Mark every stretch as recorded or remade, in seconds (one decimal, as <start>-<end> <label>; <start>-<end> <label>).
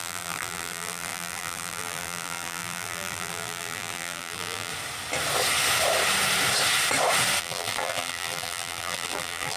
0.0-4.7 remade; 4.7-7.4 recorded; 7.4-9.6 remade